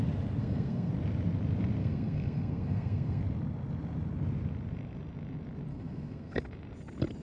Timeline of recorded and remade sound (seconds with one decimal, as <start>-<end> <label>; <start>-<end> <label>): 0.0-0.4 recorded; 0.4-0.9 remade; 0.9-1.8 recorded; 1.8-3.2 remade; 3.2-5.7 recorded; 5.7-6.4 remade; 6.4-7.2 recorded